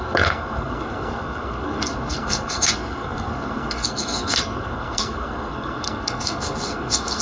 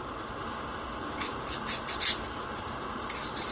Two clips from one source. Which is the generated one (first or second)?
first